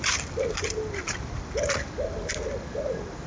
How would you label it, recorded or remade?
recorded